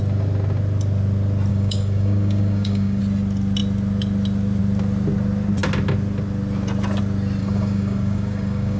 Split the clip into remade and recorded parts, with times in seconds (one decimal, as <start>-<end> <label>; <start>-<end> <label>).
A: 0.0-1.5 recorded; 1.5-3.0 remade; 3.0-7.4 recorded; 7.4-8.8 remade